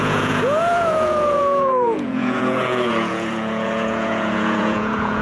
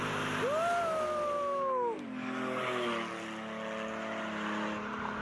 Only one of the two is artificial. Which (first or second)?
first